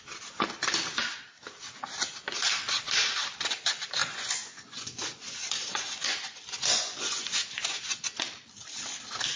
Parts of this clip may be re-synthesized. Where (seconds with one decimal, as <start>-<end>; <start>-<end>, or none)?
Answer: 4.0-8.0

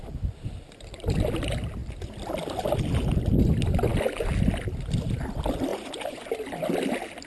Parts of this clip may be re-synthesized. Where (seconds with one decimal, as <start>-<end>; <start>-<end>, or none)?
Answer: 5.7-6.3

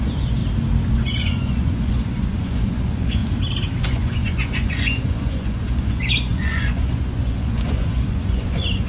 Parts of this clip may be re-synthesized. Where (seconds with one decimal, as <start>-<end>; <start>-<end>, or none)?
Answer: 0.0-0.4; 0.9-3.2; 3.8-8.9

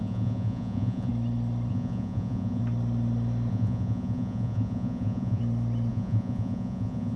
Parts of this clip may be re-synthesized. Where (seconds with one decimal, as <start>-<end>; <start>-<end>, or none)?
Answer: 0.0-1.1; 1.7-2.6; 3.5-5.4; 5.9-7.2

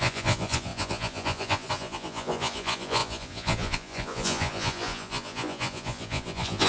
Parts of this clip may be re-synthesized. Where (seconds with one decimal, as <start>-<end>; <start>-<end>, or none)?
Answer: 0.0-6.7

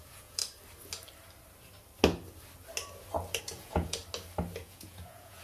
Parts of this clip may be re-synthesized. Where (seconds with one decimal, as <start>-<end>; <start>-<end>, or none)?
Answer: 0.0-0.4; 3.4-4.0; 4.6-5.4